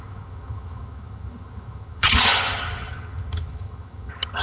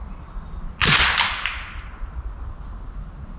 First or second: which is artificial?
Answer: first